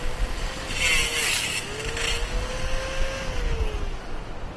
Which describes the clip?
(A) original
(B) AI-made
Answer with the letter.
A